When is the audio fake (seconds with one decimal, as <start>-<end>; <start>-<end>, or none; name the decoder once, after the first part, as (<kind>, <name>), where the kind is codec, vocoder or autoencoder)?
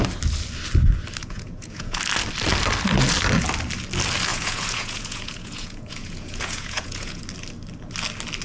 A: 1.2-2.0 (vocoder, Vocos); 4.3-7.2